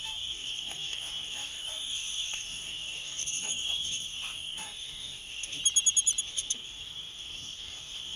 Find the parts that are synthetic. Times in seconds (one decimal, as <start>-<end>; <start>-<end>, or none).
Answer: 0.0-5.6; 6.2-8.2